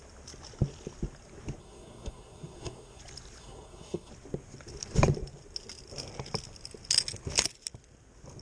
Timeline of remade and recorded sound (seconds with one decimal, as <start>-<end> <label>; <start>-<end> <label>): 0.0-1.6 recorded; 1.6-3.0 remade; 3.0-3.4 recorded; 3.4-4.1 remade; 4.1-8.4 recorded